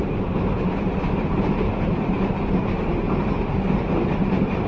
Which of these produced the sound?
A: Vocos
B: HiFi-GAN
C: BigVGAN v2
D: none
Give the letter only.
C